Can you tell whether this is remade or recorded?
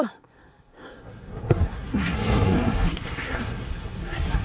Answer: remade